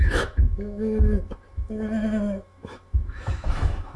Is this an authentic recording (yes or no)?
no